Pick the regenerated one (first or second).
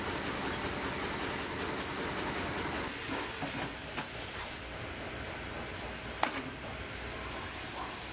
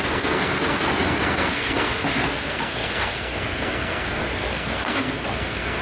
second